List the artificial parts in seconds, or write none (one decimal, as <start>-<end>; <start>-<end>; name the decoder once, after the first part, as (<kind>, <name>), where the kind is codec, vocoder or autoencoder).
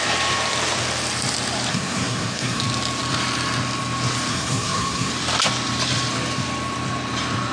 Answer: 1.7-2.6 (codec, SNAC); 4.3-5.1